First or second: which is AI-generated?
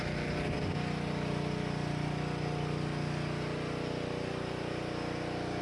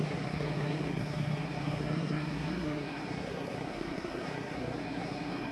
second